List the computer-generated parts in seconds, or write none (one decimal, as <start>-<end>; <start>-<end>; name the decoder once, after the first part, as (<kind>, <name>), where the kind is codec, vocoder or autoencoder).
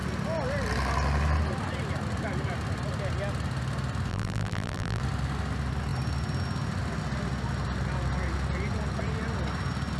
4.1-5.0 (vocoder, BigVGAN v2)